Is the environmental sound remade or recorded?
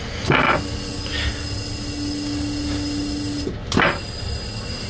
recorded